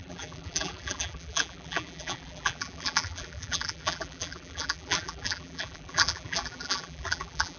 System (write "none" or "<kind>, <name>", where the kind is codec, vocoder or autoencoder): vocoder, BigVGAN v2